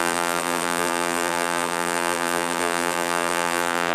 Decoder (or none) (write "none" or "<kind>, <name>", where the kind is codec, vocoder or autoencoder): vocoder, BigVGAN v2